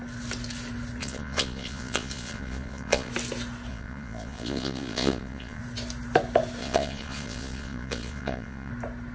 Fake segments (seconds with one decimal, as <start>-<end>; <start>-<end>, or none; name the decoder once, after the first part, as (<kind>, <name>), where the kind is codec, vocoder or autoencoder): 1.0-3.1 (vocoder, Vocos); 3.7-5.6; 6.6-8.7